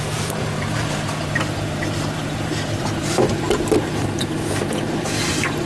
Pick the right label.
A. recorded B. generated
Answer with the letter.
B